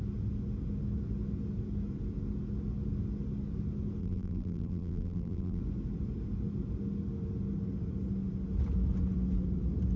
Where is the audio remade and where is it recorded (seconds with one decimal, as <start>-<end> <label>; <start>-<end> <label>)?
0.0-4.0 recorded; 4.0-5.6 remade; 5.6-10.0 recorded

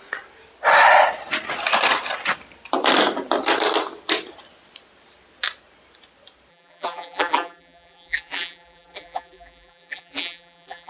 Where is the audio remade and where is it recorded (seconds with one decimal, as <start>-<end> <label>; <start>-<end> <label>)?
0.0-6.5 recorded; 6.5-10.9 remade

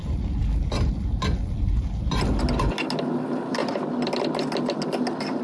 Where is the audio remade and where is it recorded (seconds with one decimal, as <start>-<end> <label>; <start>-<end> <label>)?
0.0-5.4 recorded

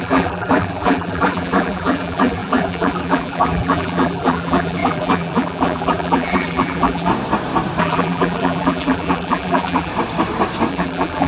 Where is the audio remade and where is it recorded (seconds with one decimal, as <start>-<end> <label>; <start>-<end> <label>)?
0.0-7.1 remade; 7.1-7.8 recorded; 7.8-9.9 remade; 9.9-10.7 recorded; 10.7-11.3 remade

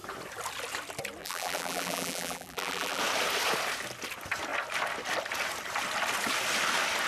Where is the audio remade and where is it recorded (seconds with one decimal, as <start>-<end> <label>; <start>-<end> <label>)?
0.0-1.2 recorded; 1.2-3.0 remade; 3.0-7.1 recorded